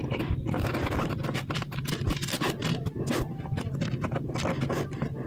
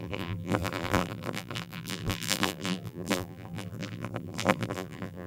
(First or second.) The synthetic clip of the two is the second